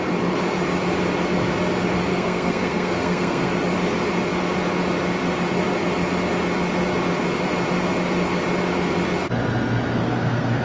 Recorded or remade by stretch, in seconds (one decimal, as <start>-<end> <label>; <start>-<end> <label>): 0.0-2.1 recorded; 2.1-3.5 remade; 3.5-10.0 recorded; 10.0-10.6 remade

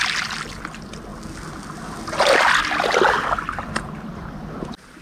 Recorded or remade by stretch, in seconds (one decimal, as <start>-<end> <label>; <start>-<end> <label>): 0.0-5.0 recorded

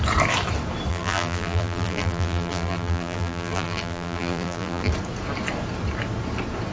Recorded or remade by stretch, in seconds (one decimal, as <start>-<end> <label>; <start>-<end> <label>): 0.0-0.9 recorded; 0.9-4.9 remade; 4.9-6.7 recorded

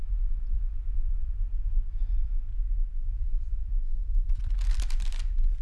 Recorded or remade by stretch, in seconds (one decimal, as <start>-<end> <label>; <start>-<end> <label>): 0.0-2.5 remade; 2.5-3.1 recorded; 3.1-5.6 remade

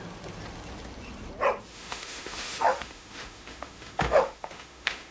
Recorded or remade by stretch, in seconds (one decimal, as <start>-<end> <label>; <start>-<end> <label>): 0.0-1.7 recorded; 1.7-5.1 remade

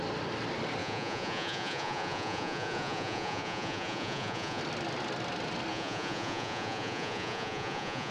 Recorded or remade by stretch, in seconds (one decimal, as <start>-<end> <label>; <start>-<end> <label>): 0.0-0.8 recorded; 0.8-4.6 remade; 4.6-5.7 recorded; 5.7-8.1 remade

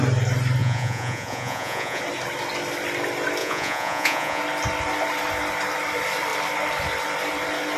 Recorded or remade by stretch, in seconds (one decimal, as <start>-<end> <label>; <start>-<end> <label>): 0.0-0.6 recorded; 0.6-2.0 remade; 2.0-3.4 recorded; 3.4-4.4 remade; 4.4-7.8 recorded